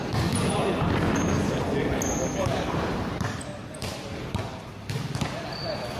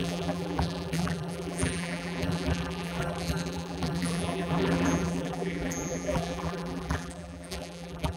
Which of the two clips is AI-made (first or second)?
second